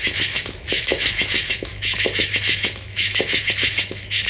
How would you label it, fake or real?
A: fake